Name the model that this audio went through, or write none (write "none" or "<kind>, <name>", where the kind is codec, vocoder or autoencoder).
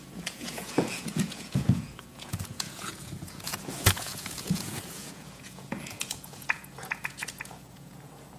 vocoder, Vocos